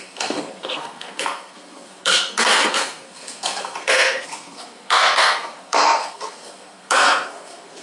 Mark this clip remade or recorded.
remade